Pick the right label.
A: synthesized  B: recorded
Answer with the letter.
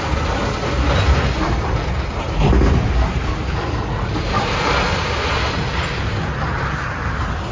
B